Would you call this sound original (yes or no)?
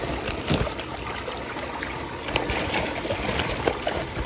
yes